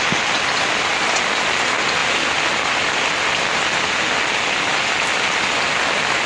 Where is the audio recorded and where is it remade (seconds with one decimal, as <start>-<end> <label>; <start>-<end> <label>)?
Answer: 0.0-6.3 recorded